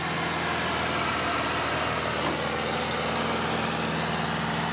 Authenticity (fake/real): real